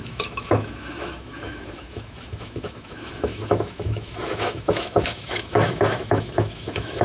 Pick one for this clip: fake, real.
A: fake